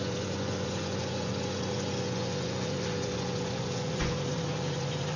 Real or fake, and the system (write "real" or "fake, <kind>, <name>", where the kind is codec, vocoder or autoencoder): fake, vocoder, Vocos